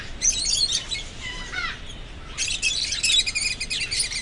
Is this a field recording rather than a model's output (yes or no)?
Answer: yes